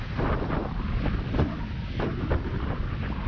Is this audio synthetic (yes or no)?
no